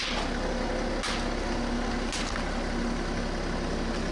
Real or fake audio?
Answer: real